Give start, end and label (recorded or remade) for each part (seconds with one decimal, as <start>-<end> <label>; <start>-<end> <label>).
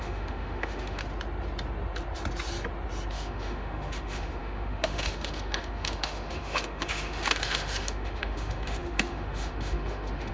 0.0-1.0 remade; 1.0-3.1 recorded; 3.1-10.3 remade